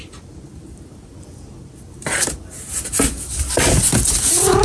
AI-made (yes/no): no